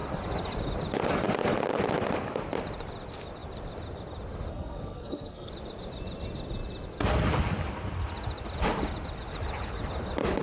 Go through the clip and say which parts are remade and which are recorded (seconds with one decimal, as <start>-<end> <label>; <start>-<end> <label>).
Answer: 0.0-4.5 recorded; 4.5-5.5 remade; 5.5-10.4 recorded